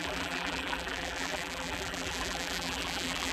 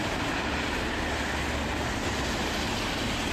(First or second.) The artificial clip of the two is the first